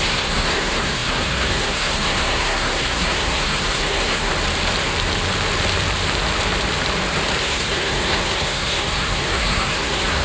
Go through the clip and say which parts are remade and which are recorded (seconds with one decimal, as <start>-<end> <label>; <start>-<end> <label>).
0.0-4.3 remade; 4.3-7.4 recorded; 7.4-10.2 remade